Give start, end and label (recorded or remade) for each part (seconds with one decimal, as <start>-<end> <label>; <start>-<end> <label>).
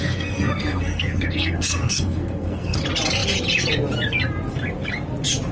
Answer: 0.0-2.8 remade; 2.8-5.5 recorded